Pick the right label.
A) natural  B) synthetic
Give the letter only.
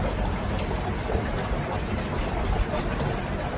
A